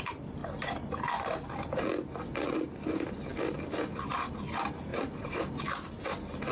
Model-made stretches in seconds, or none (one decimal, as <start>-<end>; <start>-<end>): 4.9-6.0